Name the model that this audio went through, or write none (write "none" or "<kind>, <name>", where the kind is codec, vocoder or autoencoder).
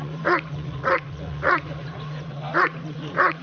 vocoder, Vocos